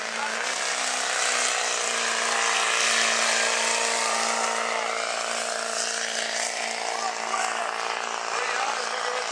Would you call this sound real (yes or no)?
yes